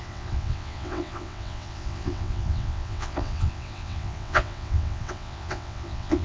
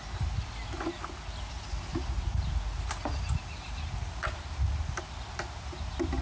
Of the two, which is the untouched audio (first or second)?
second